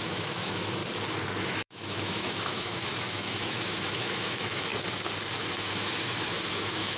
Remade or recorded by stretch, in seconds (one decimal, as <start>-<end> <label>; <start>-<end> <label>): 0.0-0.8 remade; 0.8-1.4 recorded; 1.4-4.7 remade; 4.7-5.4 recorded; 5.4-7.0 remade